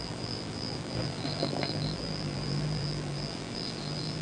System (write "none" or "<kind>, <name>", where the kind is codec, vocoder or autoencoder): vocoder, BigVGAN v2